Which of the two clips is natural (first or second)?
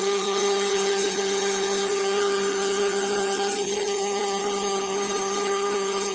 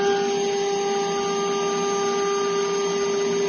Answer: second